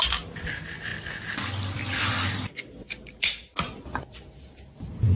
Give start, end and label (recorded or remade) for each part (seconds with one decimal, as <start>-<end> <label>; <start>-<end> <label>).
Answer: 0.0-5.2 recorded